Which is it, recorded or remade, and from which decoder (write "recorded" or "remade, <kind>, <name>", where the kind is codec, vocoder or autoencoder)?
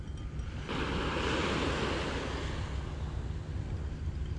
recorded